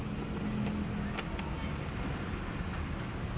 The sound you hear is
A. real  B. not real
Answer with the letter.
A